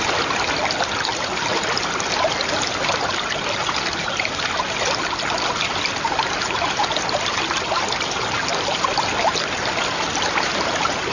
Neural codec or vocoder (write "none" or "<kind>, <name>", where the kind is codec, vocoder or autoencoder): none